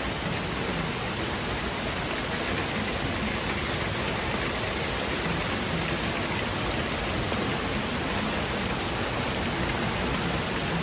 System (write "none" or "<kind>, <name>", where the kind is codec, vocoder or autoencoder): none